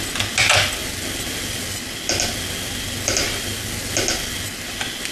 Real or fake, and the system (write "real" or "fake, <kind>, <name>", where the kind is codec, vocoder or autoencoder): real